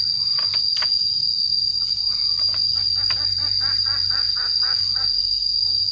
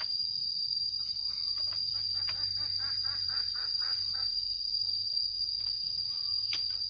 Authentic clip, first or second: first